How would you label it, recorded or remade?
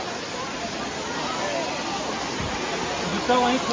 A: recorded